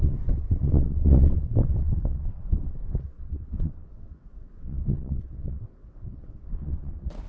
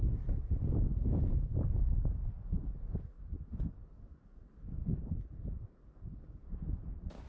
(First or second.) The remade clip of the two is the first